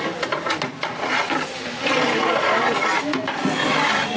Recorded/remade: recorded